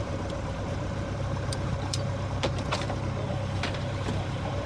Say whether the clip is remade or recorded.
remade